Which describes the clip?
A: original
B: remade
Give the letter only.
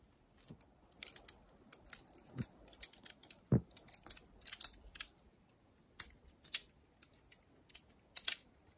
A